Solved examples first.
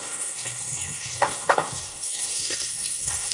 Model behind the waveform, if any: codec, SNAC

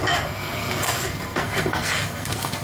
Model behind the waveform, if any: codec, SNAC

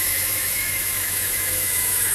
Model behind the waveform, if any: autoencoder, DAC-VAE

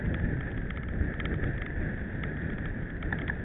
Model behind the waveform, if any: none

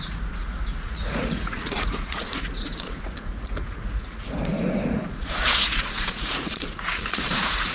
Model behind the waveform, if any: vocoder, Vocos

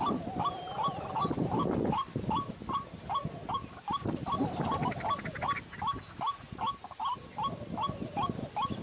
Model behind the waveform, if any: none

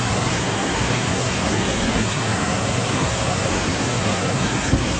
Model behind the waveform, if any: codec, SNAC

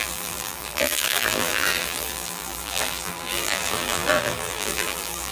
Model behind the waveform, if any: vocoder, BigVGAN v2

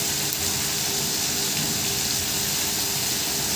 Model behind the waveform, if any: none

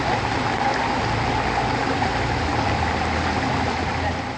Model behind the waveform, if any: none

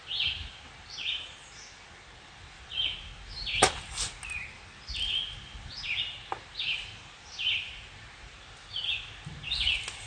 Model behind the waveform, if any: none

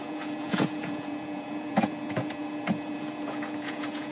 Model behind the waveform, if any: vocoder, Vocos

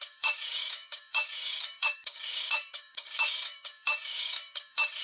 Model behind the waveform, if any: codec, DAC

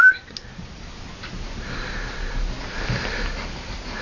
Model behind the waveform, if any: none